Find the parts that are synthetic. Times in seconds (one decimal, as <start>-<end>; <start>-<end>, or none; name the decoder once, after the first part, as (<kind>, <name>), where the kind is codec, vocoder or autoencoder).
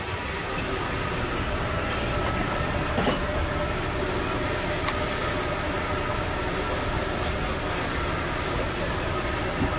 none